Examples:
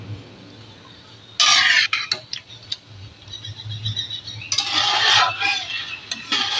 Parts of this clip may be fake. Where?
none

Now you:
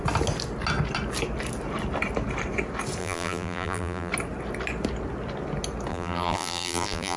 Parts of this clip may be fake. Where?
3.0-4.1 (vocoder, BigVGAN v2); 5.9-7.2

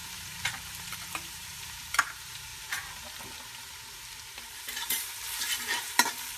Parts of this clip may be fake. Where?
0.0-2.5 (vocoder, BigVGAN v2); 4.2-6.4

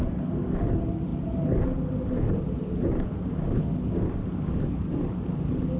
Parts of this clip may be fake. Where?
none

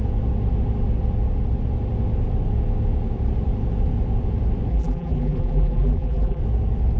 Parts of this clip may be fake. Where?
4.7-6.4 (vocoder, BigVGAN v2)

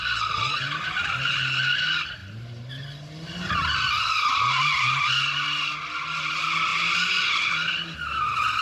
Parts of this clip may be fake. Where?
none

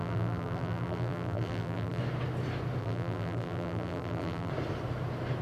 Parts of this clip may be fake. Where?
0.0-2.0 (vocoder, BigVGAN v2); 2.8-4.5

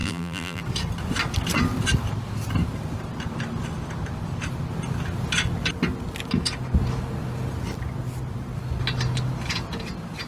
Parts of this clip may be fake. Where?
0.0-0.6 (vocoder, BigVGAN v2)